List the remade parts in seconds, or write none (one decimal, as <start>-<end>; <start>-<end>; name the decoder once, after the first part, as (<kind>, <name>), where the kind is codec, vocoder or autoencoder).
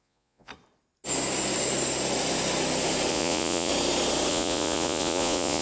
0.0-0.5 (vocoder, Vocos); 3.1-3.7; 4.3-5.6